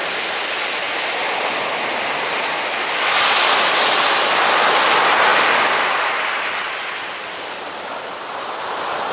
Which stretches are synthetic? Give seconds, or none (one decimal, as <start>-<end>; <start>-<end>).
none